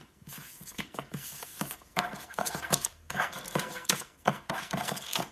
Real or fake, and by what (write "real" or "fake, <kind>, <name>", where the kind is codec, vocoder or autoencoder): fake, codec, SNAC